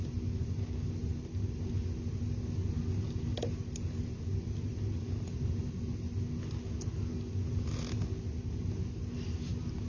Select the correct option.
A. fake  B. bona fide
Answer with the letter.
B